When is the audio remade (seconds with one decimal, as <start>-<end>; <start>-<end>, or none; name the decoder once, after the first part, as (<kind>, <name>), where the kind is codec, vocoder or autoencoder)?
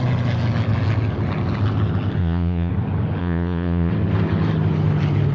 2.2-2.7 (vocoder, Vocos); 3.2-3.9